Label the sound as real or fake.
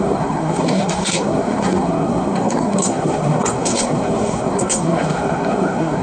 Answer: fake